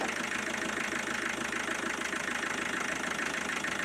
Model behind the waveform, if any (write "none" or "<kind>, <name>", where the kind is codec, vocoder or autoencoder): none